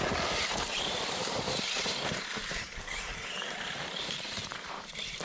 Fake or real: fake